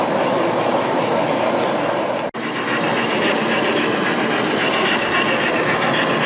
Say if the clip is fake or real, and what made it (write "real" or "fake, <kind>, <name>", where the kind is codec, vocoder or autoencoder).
real